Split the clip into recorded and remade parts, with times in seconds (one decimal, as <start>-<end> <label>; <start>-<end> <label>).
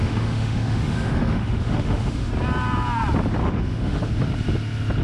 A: 0.0-2.3 remade; 2.3-3.4 recorded; 3.4-4.1 remade; 4.1-5.0 recorded